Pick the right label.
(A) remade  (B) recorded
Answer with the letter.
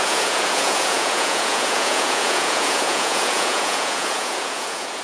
A